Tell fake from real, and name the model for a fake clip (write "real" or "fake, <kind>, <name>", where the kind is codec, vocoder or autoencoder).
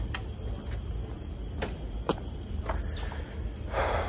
real